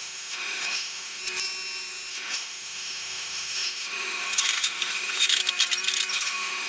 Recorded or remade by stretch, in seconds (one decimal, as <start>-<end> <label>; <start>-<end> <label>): 0.0-1.2 remade; 1.2-2.1 recorded; 2.1-5.4 remade; 5.4-6.1 recorded; 6.1-6.7 remade